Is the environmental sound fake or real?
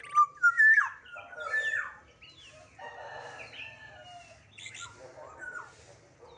real